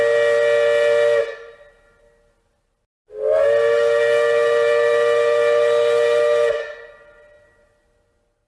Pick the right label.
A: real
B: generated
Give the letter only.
A